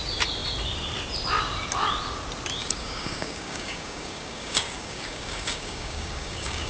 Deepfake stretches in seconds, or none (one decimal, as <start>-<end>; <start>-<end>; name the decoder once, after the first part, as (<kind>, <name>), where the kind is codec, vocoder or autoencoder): 2.6-6.7 (codec, DAC)